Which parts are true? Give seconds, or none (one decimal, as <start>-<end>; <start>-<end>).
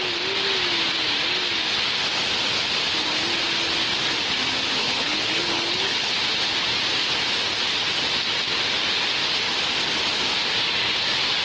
0.0-4.8; 6.1-11.4